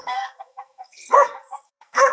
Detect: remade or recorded remade